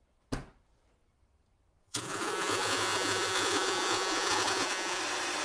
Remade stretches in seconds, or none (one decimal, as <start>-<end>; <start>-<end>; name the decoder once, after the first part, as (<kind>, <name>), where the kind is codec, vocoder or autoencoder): 1.8-5.0 (vocoder, Vocos)